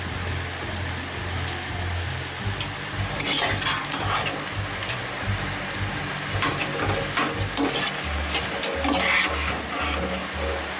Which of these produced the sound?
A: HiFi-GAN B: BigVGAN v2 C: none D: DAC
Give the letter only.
C